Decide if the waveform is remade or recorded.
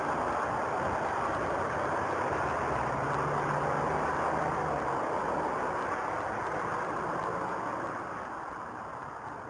recorded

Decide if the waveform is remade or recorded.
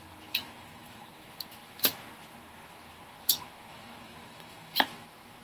remade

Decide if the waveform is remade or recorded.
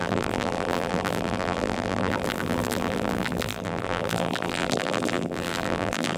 remade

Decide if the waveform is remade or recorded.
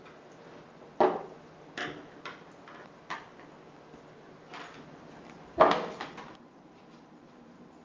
recorded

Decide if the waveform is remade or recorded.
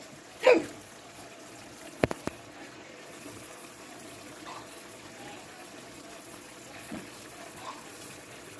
remade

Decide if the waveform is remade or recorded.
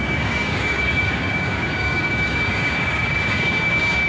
remade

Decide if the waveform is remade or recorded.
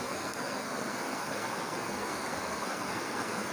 remade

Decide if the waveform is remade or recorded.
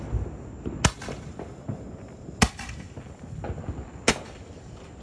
recorded